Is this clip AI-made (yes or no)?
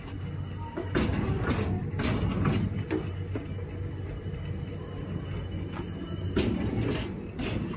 no